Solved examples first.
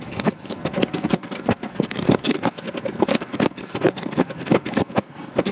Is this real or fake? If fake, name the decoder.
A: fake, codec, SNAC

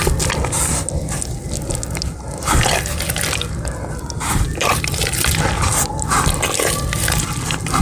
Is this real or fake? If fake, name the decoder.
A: real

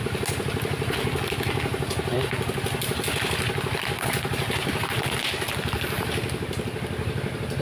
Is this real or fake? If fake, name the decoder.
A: real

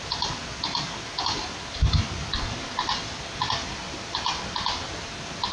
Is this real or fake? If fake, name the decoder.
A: real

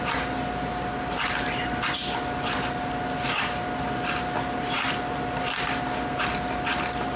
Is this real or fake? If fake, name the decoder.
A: real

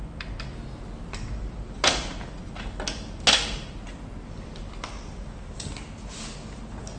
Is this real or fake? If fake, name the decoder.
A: real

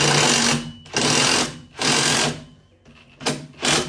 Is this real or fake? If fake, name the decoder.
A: real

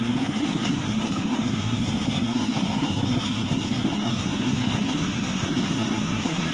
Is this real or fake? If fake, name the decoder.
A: fake, codec, SNAC